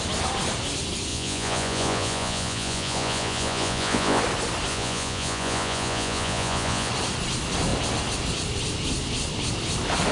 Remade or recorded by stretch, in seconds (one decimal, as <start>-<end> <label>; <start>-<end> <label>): 0.0-1.1 recorded; 1.1-4.2 remade; 4.2-4.7 recorded; 4.7-6.9 remade; 6.9-10.1 recorded